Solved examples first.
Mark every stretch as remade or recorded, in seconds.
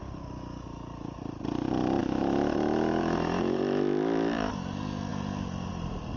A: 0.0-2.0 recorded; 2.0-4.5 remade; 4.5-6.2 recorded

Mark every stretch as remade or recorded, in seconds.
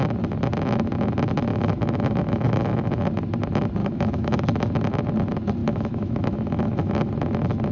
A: 0.0-1.5 recorded; 1.5-3.0 remade; 3.0-3.8 recorded; 3.8-4.4 remade; 4.4-5.6 recorded; 5.6-7.1 remade; 7.1-7.7 recorded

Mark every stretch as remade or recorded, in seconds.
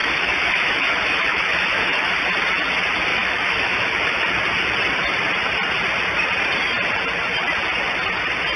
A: 0.0-2.2 remade; 2.2-3.1 recorded; 3.1-4.3 remade; 4.3-8.6 recorded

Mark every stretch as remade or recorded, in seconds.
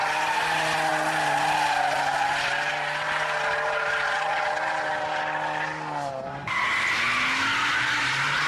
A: 0.0-8.5 recorded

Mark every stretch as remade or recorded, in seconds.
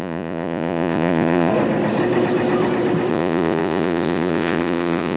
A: 0.0-1.5 remade; 1.5-3.1 recorded; 3.1-5.2 remade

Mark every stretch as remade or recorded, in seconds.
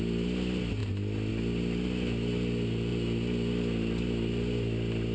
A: 0.0-5.1 recorded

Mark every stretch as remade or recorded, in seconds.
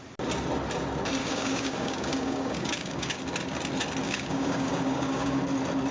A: 0.0-1.2 recorded; 1.2-3.2 remade; 3.2-4.0 recorded; 4.0-5.4 remade; 5.4-5.9 recorded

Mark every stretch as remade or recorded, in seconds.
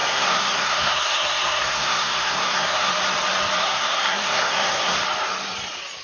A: 0.0-2.9 remade; 2.9-3.6 recorded; 3.6-5.0 remade; 5.0-6.0 recorded